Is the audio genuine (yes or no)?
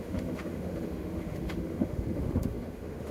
no